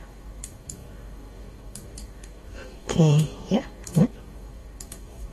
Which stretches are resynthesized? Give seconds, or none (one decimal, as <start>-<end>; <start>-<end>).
0.0-5.3